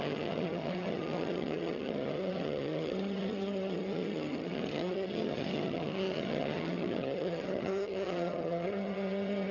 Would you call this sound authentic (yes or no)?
no